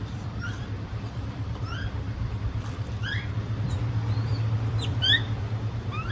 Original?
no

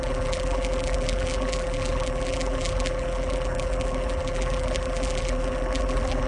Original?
no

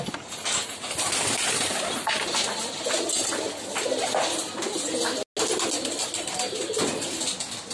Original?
yes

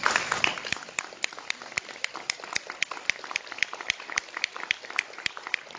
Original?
no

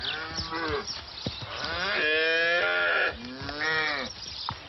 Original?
yes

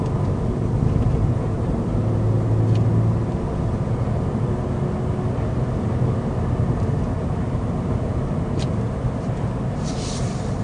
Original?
yes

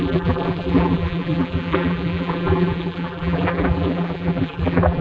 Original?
no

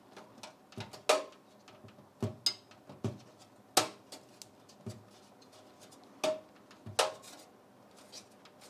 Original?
yes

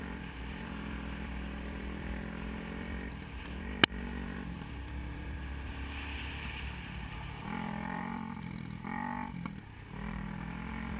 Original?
no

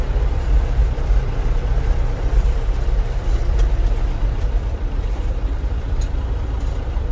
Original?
no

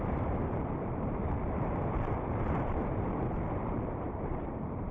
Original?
no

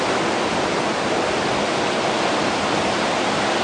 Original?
yes